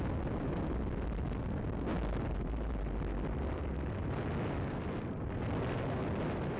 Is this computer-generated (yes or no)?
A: no